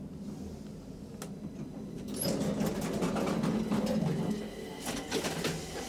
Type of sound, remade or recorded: recorded